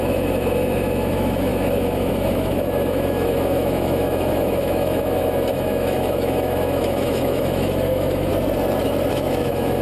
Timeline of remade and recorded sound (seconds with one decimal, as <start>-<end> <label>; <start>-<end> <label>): 0.0-8.3 remade; 8.3-9.1 recorded; 9.1-9.8 remade